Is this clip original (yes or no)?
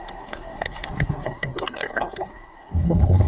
no